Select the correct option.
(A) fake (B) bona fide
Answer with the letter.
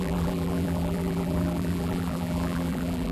A